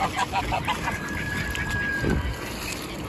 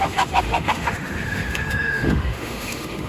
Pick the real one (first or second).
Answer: first